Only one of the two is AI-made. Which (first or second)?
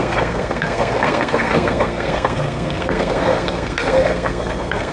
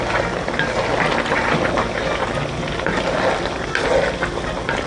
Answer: first